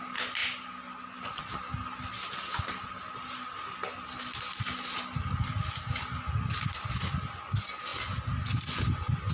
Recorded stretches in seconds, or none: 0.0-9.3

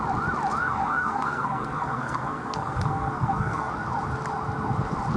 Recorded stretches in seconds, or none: 0.0-0.6; 3.7-5.2

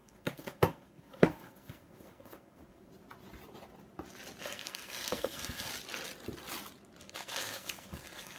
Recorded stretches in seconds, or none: 2.9-4.4; 5.7-7.0

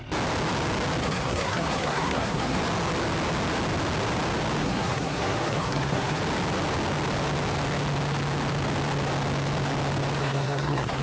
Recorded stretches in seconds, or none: 0.0-1.0; 2.6-4.6; 6.2-10.2

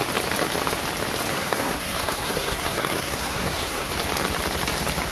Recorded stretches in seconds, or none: 0.0-1.3; 3.9-5.1

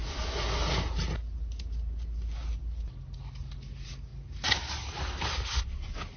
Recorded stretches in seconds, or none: 0.0-6.2